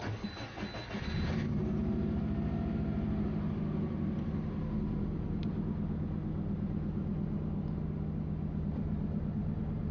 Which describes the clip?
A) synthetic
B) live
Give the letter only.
B